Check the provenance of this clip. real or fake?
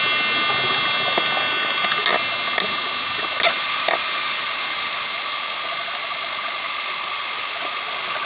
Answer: real